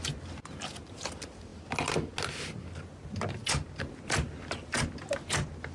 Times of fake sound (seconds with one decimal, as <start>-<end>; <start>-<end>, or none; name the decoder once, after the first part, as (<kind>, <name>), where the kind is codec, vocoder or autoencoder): none